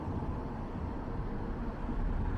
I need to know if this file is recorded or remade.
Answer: recorded